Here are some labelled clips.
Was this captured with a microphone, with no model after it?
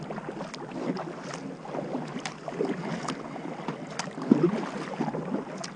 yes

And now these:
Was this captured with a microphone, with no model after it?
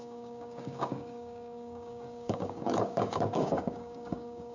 no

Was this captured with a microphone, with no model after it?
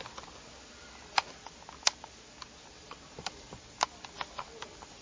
yes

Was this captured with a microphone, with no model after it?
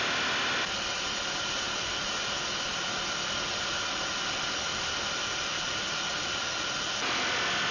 yes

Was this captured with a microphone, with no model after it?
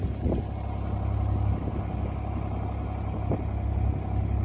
yes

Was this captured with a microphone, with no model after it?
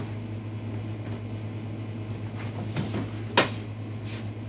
yes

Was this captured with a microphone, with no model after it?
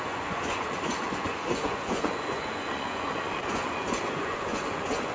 no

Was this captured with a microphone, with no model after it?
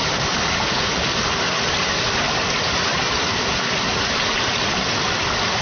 yes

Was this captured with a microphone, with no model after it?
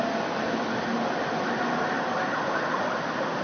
yes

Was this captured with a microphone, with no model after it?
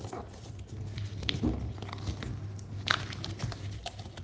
yes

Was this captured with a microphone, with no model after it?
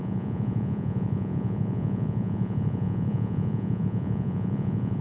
no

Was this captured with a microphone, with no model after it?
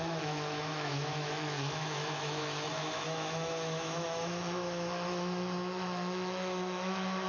no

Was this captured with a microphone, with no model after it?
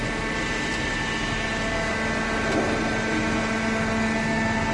yes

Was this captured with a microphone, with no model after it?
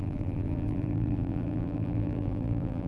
no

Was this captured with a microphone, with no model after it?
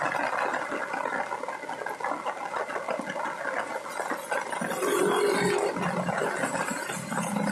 yes